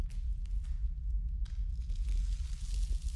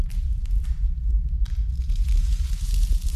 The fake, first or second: second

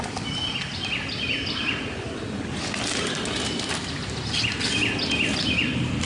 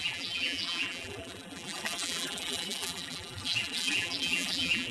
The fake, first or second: second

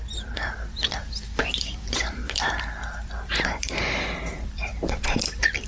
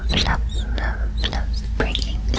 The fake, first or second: first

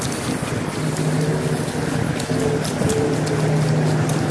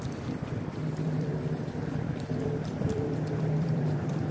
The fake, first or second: second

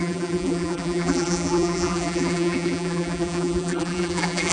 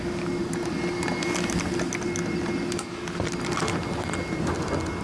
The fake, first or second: first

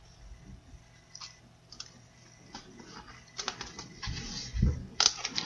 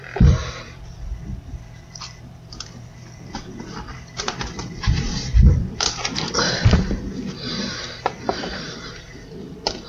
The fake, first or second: second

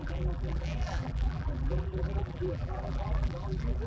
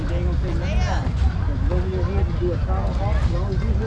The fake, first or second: first